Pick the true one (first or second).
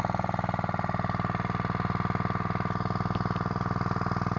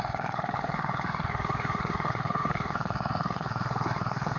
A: first